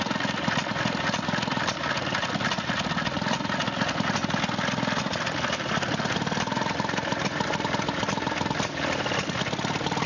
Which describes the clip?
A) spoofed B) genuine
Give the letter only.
B